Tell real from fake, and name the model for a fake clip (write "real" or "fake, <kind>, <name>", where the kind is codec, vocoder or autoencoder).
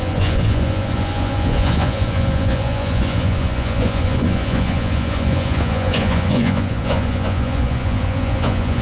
fake, vocoder, Vocos